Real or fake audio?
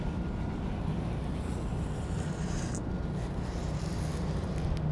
real